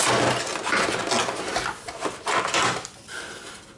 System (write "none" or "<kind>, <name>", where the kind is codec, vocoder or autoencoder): none